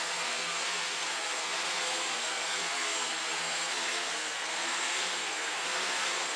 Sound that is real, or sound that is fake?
fake